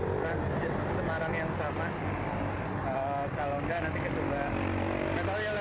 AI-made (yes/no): no